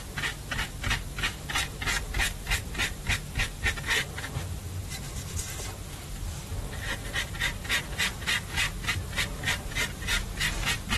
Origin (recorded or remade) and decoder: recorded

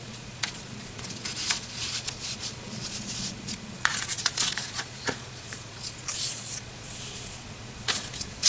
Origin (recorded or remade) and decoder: remade, vocoder, Vocos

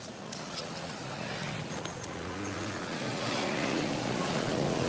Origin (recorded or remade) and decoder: remade, vocoder, Vocos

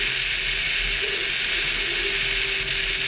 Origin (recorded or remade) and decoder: recorded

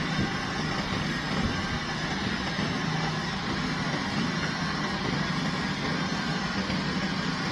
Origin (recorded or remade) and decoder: recorded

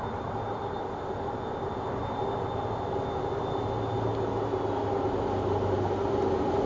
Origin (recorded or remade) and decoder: recorded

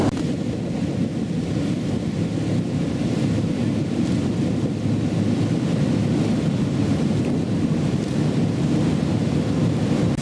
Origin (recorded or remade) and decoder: recorded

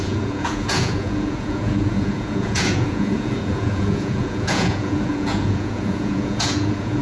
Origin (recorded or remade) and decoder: remade, vocoder, Vocos